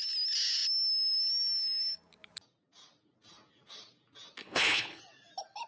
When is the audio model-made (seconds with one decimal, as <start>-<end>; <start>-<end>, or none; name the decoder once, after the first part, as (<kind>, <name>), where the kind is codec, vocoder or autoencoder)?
4.4-5.0 (codec, HILCodec)